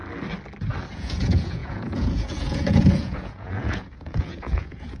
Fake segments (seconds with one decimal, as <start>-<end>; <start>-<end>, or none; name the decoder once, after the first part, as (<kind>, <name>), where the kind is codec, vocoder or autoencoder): 0.9-5.0 (vocoder, Vocos)